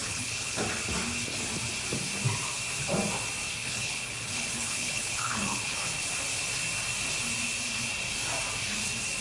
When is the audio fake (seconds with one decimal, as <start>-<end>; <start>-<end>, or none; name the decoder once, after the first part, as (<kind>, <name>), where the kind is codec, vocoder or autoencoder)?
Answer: 0.0-0.6 (codec, HILCodec); 3.6-6.1